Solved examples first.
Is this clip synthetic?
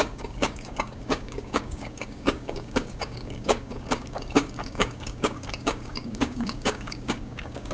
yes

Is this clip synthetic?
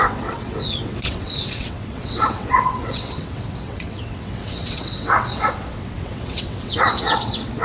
yes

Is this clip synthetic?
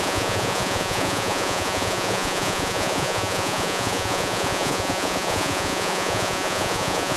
yes